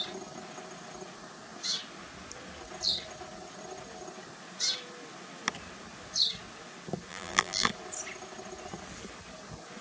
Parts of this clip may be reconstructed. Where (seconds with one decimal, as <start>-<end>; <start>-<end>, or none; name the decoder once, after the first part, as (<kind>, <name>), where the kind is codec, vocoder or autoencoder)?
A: 7.1-7.7 (vocoder, BigVGAN v2)